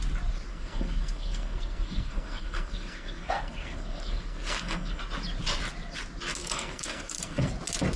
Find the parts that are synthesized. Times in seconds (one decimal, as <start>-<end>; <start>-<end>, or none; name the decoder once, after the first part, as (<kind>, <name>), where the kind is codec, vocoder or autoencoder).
0.5-5.0 (codec, SNAC); 6.4-7.5